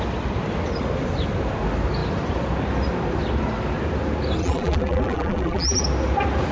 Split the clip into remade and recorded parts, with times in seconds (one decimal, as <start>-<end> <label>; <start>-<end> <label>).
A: 0.0-4.4 recorded; 4.4-5.8 remade; 5.8-6.5 recorded